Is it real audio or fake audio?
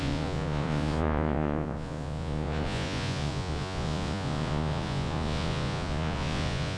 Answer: fake